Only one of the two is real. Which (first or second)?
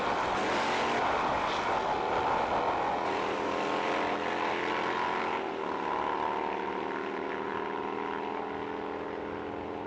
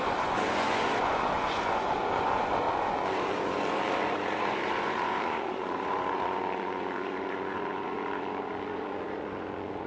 first